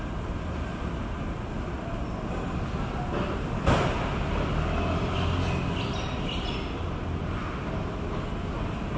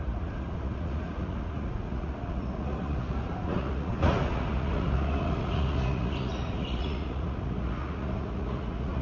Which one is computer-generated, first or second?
second